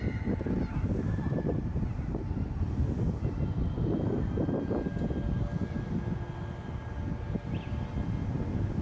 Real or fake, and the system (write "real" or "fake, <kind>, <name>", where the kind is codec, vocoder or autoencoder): real